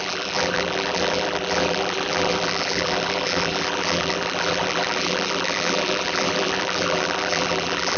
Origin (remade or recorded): remade